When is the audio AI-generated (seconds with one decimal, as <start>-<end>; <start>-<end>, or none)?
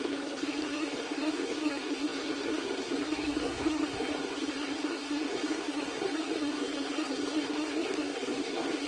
0.0-8.9